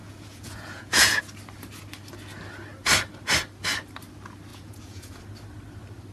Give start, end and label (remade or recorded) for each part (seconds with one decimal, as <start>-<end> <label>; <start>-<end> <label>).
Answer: 0.0-1.2 remade; 1.2-4.5 recorded; 4.5-5.2 remade; 5.2-6.1 recorded